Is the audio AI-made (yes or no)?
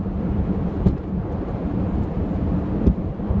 yes